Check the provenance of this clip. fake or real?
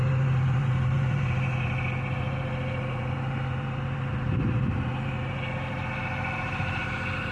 fake